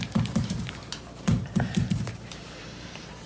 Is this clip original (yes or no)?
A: no